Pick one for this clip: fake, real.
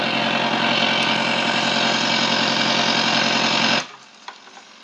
real